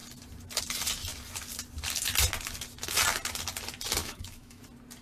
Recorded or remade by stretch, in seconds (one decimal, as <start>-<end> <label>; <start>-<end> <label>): 0.0-4.0 recorded; 4.0-4.6 remade; 4.6-5.0 recorded

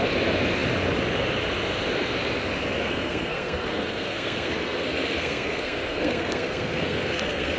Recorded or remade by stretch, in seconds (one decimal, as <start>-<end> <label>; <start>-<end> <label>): 0.0-2.8 recorded; 2.8-7.6 remade